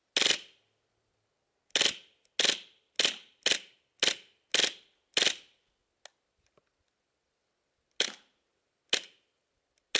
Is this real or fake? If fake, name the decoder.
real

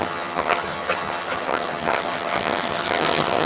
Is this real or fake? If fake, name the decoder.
fake, vocoder, HiFi-GAN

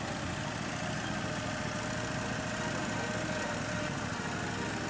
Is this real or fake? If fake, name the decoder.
real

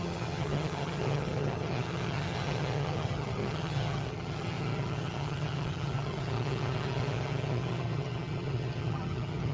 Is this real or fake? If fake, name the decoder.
fake, vocoder, HiFi-GAN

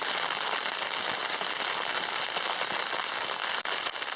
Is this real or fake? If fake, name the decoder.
real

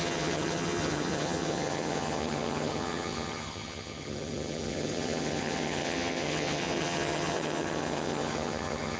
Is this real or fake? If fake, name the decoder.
fake, vocoder, HiFi-GAN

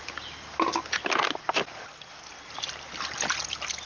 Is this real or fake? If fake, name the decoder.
real